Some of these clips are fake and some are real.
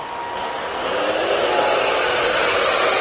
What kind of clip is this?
real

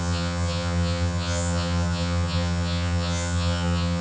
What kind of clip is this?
fake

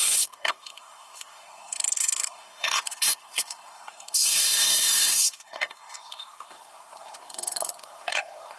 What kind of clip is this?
fake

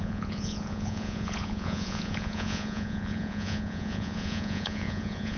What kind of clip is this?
fake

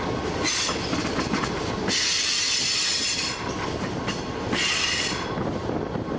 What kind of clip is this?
real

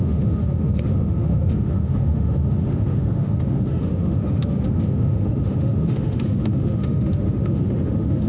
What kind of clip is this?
fake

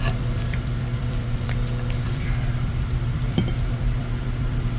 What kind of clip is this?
fake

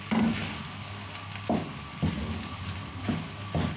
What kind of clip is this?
real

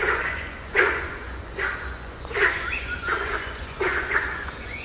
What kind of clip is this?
fake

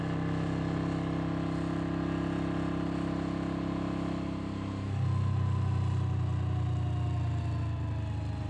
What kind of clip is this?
real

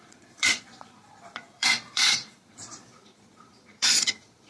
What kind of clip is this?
fake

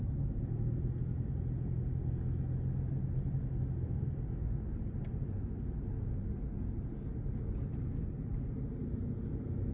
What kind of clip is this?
real